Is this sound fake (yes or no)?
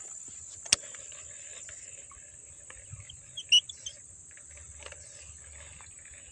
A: no